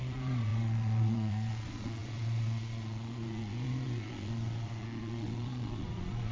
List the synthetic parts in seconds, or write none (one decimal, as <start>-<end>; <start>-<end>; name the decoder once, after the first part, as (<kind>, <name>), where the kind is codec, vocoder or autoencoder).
0.0-6.3 (vocoder, Vocos)

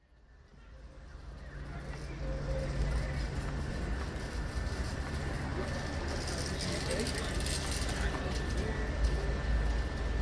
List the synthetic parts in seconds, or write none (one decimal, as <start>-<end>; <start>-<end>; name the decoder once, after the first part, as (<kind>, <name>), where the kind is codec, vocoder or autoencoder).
none

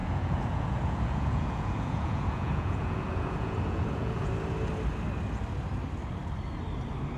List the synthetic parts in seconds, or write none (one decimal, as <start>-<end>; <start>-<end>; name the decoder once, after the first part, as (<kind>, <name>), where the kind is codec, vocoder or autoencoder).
0.0-4.3 (vocoder, Vocos)

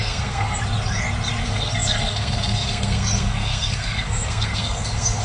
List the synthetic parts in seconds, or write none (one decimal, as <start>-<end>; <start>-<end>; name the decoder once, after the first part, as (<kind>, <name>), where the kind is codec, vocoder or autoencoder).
0.0-0.6 (codec, SNAC); 1.4-5.2